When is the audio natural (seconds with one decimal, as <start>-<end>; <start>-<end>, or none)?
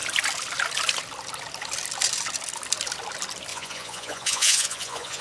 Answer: 0.0-3.5